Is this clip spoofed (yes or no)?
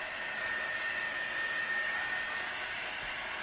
no